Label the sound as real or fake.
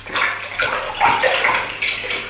real